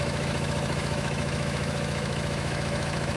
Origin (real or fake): fake